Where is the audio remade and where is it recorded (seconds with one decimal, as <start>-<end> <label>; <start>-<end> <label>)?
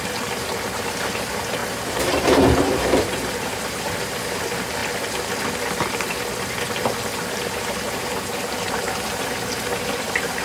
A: 0.0-4.8 remade; 4.8-7.3 recorded; 7.3-10.4 remade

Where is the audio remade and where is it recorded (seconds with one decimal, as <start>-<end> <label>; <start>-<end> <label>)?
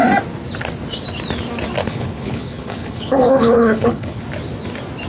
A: 0.0-1.8 recorded; 1.8-4.2 remade; 4.2-5.1 recorded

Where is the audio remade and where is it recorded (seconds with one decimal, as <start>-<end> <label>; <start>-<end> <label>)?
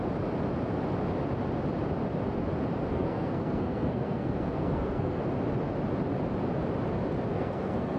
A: 0.0-2.9 recorded; 2.9-5.2 remade; 5.2-7.3 recorded; 7.3-8.0 remade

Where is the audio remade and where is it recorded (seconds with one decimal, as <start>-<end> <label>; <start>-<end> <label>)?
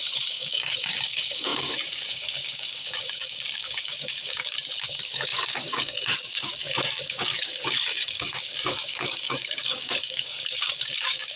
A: 0.0-11.4 remade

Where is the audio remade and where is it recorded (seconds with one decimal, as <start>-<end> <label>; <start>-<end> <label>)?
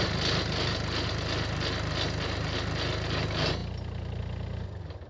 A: 0.0-5.1 recorded